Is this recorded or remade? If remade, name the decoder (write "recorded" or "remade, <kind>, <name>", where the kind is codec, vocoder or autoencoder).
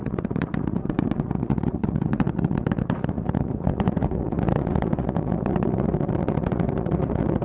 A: remade, vocoder, Vocos